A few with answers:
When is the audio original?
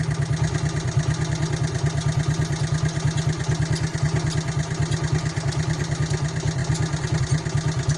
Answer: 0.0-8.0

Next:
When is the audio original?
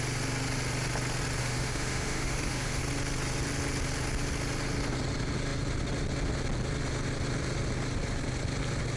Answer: 0.0-1.4; 2.8-9.0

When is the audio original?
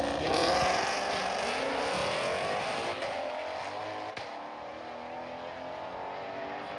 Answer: 0.0-6.8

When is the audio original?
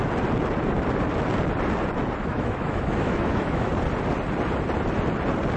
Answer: 0.0-2.2; 3.7-5.6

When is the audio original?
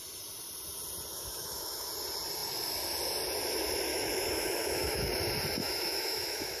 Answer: 0.0-1.1; 1.9-3.9; 5.1-5.6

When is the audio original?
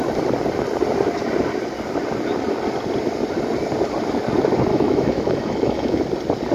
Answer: 0.0-4.7; 6.0-6.5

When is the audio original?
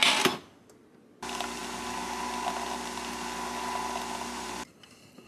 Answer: 0.0-5.3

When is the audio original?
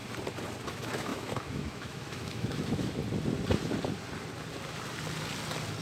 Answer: 0.0-0.7; 3.0-5.8